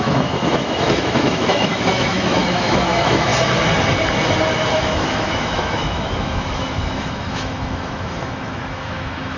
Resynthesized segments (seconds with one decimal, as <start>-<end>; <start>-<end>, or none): 0.0-3.3; 4.7-9.4